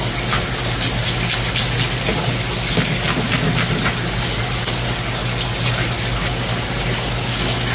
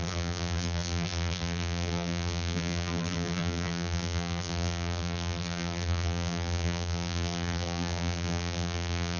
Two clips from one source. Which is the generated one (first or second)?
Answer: second